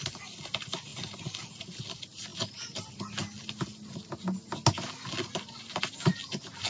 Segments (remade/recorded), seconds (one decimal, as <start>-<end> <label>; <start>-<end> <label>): 0.0-6.7 recorded